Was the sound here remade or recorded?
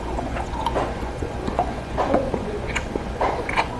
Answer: remade